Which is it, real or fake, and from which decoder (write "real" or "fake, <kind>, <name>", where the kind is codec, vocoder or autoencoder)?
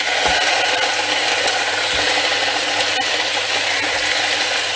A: real